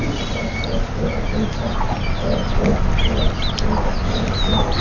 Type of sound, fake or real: real